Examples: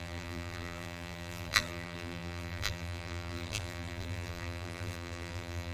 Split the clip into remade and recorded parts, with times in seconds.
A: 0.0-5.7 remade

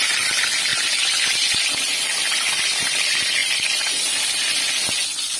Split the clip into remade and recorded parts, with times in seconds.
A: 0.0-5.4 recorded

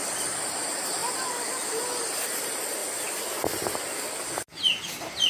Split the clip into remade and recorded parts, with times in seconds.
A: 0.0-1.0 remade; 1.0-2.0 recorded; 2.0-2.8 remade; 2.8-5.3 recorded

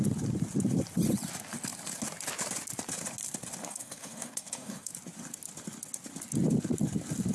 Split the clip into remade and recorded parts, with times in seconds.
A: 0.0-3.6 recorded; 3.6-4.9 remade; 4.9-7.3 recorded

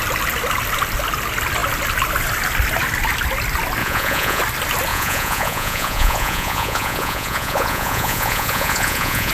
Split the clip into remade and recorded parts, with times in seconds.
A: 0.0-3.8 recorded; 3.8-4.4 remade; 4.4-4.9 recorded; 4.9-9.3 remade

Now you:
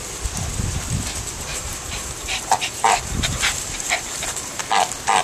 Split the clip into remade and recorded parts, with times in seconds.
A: 0.0-1.5 recorded; 1.5-4.6 remade; 4.6-5.2 recorded

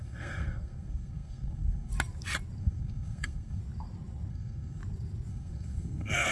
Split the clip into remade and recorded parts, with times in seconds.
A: 0.0-1.9 remade; 1.9-2.6 recorded; 2.6-3.6 remade; 3.6-4.3 recorded; 4.3-4.8 remade; 4.8-5.3 recorded; 5.3-6.3 remade

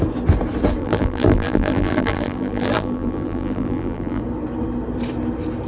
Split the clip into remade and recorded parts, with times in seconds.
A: 0.0-0.8 recorded; 0.8-4.2 remade; 4.2-5.7 recorded